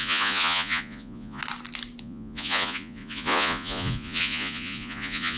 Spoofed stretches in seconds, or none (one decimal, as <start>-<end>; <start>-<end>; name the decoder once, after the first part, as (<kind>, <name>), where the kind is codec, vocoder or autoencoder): 0.0-1.4 (vocoder, Vocos); 2.0-5.4